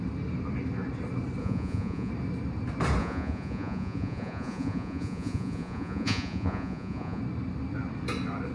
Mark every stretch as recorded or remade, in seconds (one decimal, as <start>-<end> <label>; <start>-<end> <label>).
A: 0.0-1.4 recorded; 1.4-2.1 remade; 2.1-3.0 recorded; 3.0-7.2 remade; 7.2-8.5 recorded

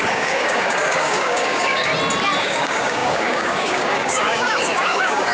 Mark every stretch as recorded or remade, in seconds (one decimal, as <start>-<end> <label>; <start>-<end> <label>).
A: 0.0-1.9 remade; 1.9-2.4 recorded; 2.4-5.3 remade

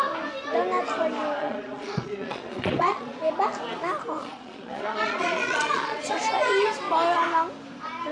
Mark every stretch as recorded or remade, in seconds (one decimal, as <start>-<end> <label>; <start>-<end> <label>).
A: 0.0-1.4 recorded; 1.4-3.2 remade; 3.2-4.2 recorded; 4.2-6.1 remade; 6.1-8.1 recorded

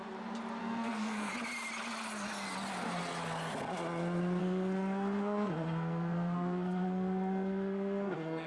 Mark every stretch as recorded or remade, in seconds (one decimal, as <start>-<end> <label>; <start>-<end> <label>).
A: 0.0-0.6 recorded; 0.6-1.3 remade; 1.3-4.4 recorded; 4.4-8.5 remade

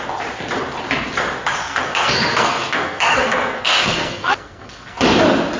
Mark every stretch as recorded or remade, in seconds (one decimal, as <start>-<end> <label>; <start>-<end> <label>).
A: 0.0-1.6 recorded; 1.6-5.0 remade; 5.0-5.6 recorded

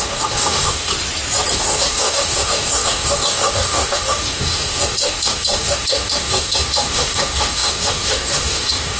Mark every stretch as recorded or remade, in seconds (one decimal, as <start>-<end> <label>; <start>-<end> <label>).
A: 0.0-0.9 remade; 0.9-1.5 recorded; 1.5-9.0 remade